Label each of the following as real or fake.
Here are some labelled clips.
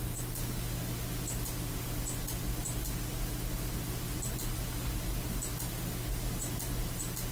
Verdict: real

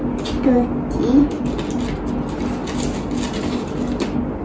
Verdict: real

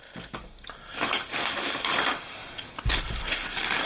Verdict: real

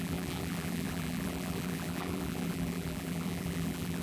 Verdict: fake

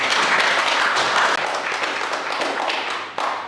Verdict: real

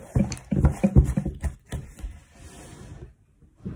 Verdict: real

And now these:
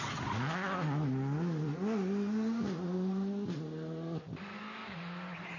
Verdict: real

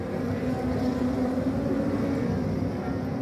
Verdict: real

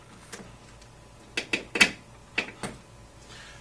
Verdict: real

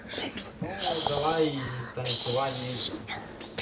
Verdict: real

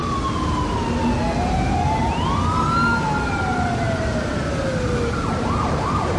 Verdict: real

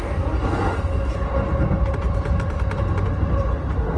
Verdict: real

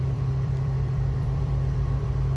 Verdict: fake